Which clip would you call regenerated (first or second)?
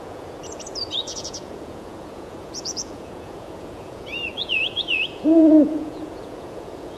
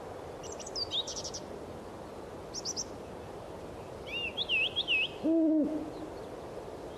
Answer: first